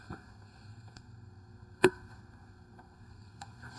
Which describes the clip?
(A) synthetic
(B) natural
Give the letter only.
A